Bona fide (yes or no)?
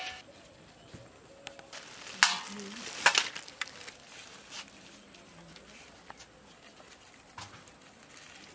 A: yes